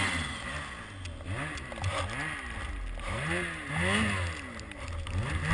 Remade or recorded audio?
recorded